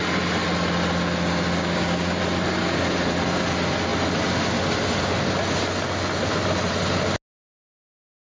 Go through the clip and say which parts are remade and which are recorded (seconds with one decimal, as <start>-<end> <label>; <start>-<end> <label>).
0.0-1.6 recorded; 1.6-2.2 remade; 2.2-8.3 recorded